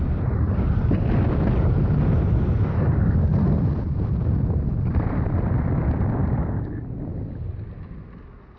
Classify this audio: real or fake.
real